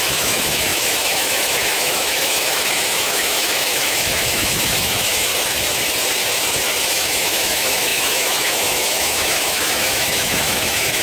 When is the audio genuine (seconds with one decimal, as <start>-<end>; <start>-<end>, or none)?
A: 5.3-6.9